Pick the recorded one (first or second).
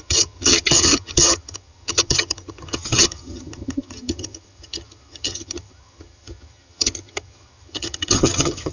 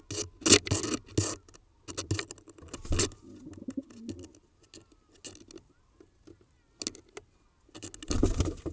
second